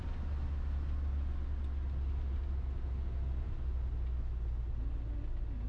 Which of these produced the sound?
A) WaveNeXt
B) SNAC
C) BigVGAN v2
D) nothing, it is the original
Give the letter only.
D